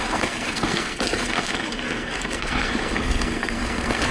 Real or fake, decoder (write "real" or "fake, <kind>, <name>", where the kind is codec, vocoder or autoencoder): fake, codec, SNAC